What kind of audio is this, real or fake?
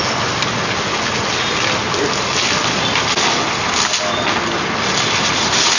real